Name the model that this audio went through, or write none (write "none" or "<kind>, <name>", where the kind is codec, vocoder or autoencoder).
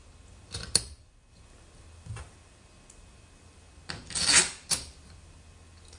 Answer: none